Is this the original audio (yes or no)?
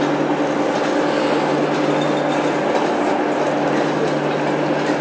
yes